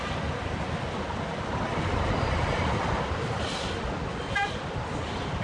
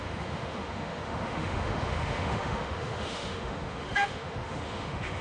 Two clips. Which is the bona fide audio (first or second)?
first